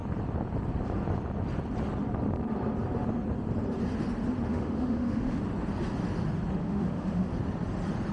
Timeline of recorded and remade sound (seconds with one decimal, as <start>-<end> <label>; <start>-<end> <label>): 0.0-4.5 recorded; 4.5-5.4 remade; 5.4-6.6 recorded; 6.6-7.3 remade; 7.3-8.1 recorded